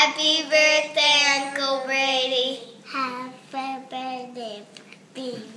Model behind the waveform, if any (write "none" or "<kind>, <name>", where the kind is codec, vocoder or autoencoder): none